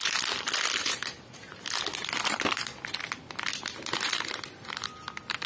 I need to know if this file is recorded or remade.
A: recorded